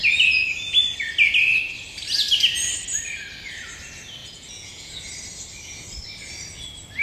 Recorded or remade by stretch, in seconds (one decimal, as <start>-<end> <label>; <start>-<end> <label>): 0.0-4.2 recorded; 4.2-5.0 remade; 5.0-7.0 recorded